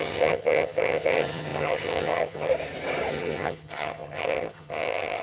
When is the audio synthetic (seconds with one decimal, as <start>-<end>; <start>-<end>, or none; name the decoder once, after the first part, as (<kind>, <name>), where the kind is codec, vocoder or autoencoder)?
0.0-2.5 (vocoder, HiFi-GAN); 3.1-5.2